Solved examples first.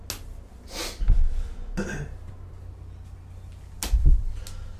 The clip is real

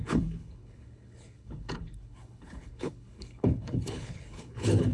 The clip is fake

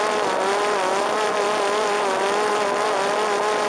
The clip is real